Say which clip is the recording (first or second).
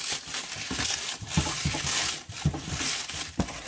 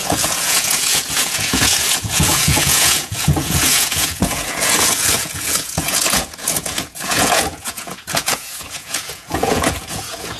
first